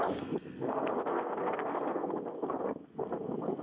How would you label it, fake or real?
fake